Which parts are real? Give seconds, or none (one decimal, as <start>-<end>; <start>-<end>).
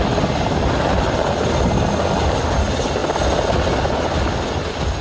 0.0-5.0